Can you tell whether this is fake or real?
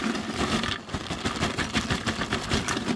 real